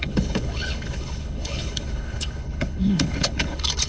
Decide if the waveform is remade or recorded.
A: remade